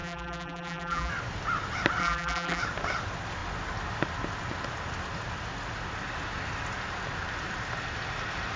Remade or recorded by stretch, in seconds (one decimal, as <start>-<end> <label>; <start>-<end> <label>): 0.0-1.1 remade; 1.1-2.0 recorded; 2.0-2.6 remade; 2.6-8.6 recorded